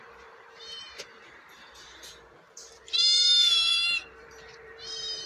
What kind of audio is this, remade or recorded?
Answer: remade